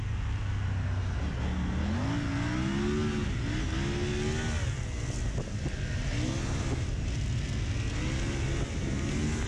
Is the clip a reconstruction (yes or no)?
no